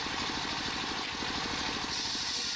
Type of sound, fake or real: real